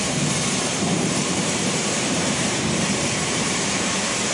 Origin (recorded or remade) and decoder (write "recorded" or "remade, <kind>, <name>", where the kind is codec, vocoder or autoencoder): remade, vocoder, BigVGAN v2